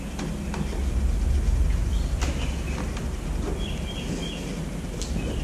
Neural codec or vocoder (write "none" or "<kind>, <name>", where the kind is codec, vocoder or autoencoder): none